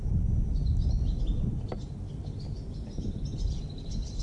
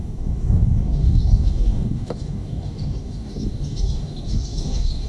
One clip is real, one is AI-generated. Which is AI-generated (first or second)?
second